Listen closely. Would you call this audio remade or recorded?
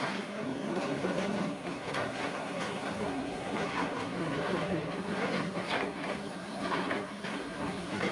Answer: remade